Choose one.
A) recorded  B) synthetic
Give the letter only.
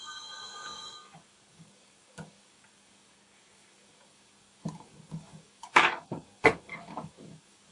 B